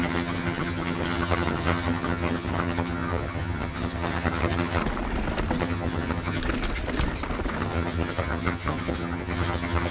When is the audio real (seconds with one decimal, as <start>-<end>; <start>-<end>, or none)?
4.8-5.6; 6.4-7.6